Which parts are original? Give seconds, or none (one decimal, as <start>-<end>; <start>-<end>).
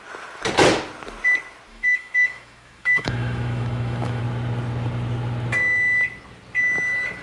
0.0-1.7; 4.2-7.2